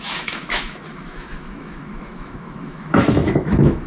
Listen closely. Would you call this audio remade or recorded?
remade